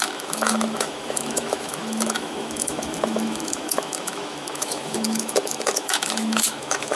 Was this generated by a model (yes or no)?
yes